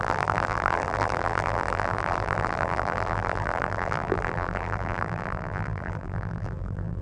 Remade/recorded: remade